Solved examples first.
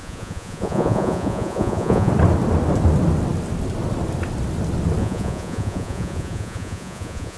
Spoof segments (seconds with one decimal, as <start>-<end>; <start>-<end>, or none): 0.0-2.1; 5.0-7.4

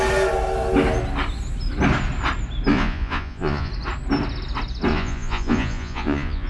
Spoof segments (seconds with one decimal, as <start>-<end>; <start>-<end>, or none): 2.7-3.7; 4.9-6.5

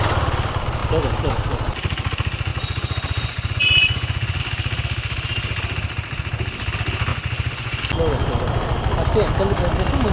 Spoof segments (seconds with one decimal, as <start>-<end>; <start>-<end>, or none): 2.5-4.4; 7.1-7.8